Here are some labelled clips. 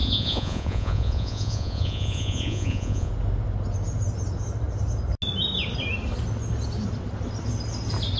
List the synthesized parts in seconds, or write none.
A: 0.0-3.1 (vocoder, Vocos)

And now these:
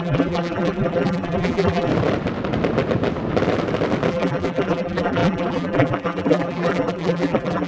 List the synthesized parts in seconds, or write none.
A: 0.0-1.9 (vocoder, BigVGAN v2); 4.1-7.7

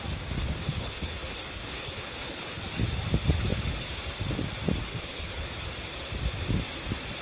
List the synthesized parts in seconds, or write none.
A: 0.4-2.6 (codec, HILCodec); 4.9-5.5

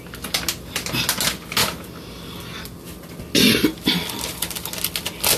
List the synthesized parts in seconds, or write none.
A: none

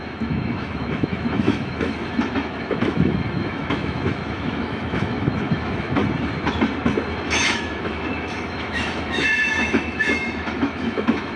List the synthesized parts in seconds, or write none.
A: 0.0-6.0 (autoencoder, DAC-VAE); 7.2-11.4

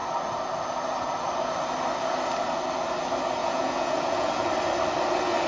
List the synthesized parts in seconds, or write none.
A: 3.4-4.4 (vocoder, Vocos)

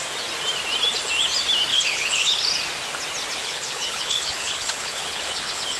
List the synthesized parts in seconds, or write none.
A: 1.7-2.4 (codec, HILCodec); 3.4-5.8

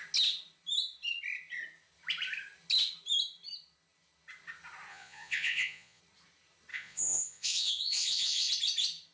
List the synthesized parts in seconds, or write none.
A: 4.9-6.0 (vocoder, Vocos); 6.7-8.5